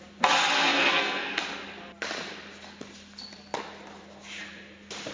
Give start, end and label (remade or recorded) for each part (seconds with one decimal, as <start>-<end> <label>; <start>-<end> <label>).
0.0-0.6 recorded; 0.6-1.4 remade; 1.4-5.1 recorded

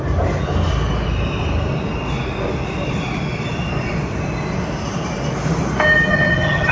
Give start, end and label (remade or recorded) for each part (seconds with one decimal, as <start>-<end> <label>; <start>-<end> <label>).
0.0-6.1 recorded; 6.1-6.7 remade

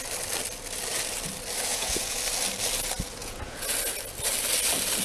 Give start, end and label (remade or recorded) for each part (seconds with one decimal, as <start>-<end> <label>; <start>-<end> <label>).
0.0-1.7 recorded; 1.7-2.2 remade; 2.2-3.2 recorded; 3.2-3.7 remade; 3.7-5.0 recorded